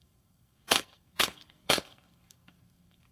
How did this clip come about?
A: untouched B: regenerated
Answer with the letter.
B